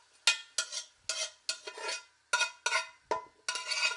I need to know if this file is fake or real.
real